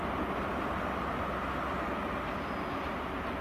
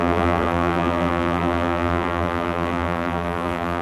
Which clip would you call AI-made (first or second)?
second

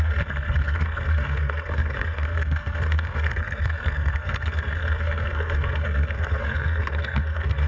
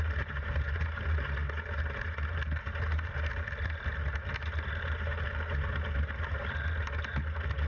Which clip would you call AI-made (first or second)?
first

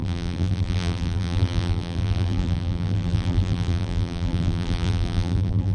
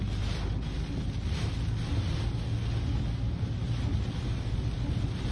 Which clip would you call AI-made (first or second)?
first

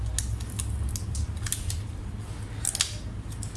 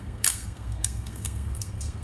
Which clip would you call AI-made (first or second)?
second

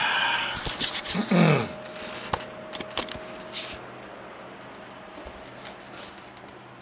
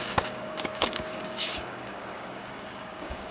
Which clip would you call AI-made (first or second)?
second